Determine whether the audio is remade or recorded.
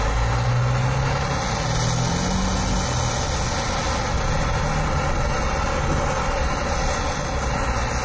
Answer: recorded